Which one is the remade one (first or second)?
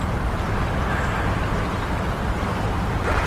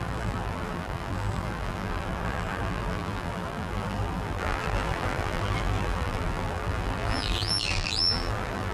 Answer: second